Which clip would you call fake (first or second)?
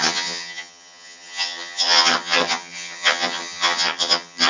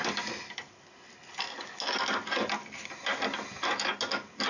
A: first